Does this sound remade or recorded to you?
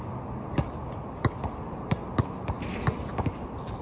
recorded